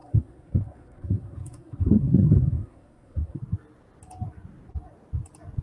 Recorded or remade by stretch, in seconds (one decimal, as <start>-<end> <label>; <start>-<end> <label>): 0.0-3.4 remade; 3.4-5.6 recorded